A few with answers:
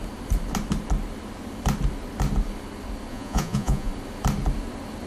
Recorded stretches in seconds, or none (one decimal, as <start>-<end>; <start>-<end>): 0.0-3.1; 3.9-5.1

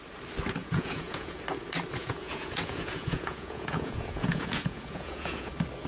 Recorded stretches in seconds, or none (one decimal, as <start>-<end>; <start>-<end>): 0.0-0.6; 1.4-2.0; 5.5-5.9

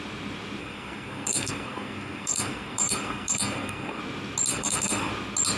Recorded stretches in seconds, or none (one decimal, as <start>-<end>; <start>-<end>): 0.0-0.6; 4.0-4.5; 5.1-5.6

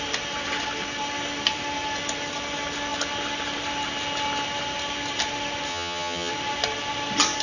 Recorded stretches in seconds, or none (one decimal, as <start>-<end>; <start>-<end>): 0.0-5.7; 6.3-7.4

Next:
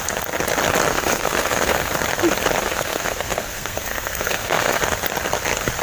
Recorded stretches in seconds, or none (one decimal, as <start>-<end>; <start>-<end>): 0.0-0.9; 1.9-2.6; 4.8-5.8